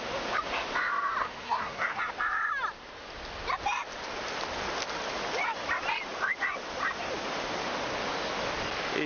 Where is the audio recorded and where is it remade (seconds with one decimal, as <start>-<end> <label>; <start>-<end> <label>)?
0.0-1.2 recorded; 1.2-2.0 remade; 2.0-9.1 recorded